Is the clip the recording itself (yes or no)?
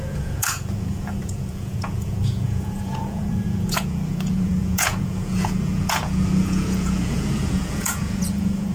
no